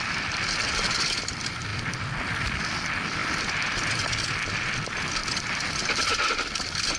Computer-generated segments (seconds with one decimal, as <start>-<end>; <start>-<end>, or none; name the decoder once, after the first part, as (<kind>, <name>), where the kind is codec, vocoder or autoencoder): none